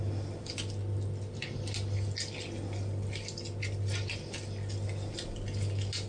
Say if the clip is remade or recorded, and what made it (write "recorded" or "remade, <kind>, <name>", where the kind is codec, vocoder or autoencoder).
recorded